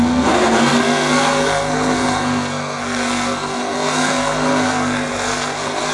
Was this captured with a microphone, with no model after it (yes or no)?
no